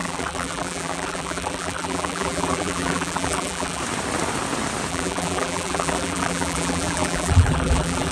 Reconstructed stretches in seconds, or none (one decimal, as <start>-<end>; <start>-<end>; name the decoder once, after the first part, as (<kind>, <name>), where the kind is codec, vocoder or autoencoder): 0.0-3.8 (vocoder, BigVGAN v2); 4.9-8.1

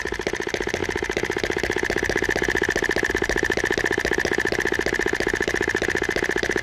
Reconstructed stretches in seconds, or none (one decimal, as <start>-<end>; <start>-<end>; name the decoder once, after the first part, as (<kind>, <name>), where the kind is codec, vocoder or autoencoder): none

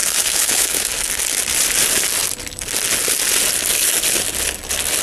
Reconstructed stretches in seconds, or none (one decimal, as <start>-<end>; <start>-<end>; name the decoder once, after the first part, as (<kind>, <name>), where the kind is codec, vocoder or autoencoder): 0.0-1.1 (autoencoder, DAC-VAE)

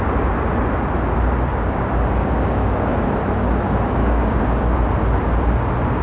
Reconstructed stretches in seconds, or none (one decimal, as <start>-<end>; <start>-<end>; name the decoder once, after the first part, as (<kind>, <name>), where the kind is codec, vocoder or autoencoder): 1.5-3.0 (codec, DAC); 4.0-4.8

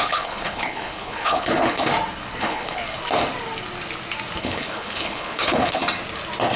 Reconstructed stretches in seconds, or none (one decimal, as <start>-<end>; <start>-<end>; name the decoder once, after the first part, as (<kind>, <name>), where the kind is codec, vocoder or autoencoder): 0.0-1.9 (codec, HILCodec); 2.4-2.8; 4.4-5.8